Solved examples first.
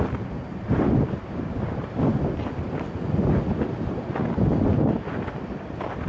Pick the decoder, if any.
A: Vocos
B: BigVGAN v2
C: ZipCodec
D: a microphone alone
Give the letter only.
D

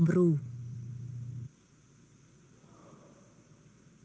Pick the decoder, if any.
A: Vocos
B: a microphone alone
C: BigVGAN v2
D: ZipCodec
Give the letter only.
B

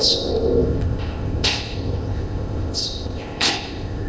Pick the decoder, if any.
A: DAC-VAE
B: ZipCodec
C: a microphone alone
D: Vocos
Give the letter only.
B